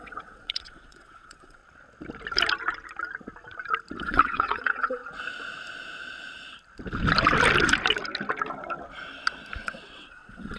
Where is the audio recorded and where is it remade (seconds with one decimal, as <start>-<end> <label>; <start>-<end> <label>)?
0.0-1.6 remade; 1.6-4.0 recorded; 4.0-5.0 remade; 5.0-9.6 recorded; 9.6-10.6 remade